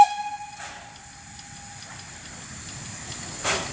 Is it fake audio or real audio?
real